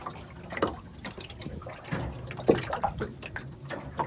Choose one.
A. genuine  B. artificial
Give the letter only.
A